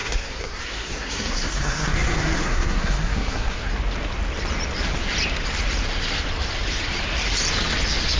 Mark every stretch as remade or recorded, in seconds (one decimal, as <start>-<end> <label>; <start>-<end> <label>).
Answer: 0.0-3.7 remade; 3.7-8.2 recorded